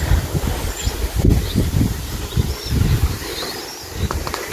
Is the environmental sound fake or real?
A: real